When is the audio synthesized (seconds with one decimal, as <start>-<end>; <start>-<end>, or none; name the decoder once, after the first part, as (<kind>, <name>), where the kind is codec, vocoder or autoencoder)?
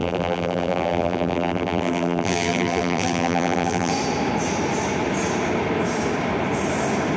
0.0-3.9 (vocoder, BigVGAN v2)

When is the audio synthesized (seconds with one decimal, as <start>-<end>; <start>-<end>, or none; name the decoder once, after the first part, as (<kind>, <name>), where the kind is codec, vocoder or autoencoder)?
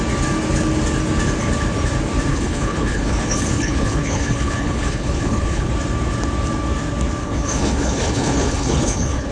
2.3-5.7 (codec, HILCodec); 7.2-9.3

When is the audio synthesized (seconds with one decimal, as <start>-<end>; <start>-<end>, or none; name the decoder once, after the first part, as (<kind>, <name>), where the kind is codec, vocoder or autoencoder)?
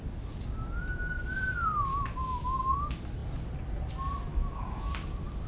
1.9-2.8 (autoencoder, DAC-VAE); 4.3-4.9